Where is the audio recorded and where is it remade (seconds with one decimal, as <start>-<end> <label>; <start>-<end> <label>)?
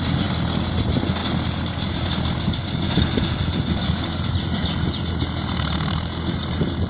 0.0-6.9 recorded